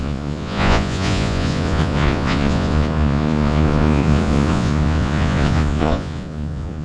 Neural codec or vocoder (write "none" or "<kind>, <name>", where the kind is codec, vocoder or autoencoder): vocoder, Vocos